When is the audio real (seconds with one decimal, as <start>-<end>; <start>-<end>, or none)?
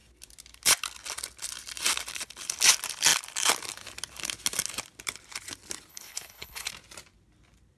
0.0-5.9; 6.7-7.8